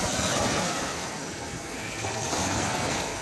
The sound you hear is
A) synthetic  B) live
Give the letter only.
A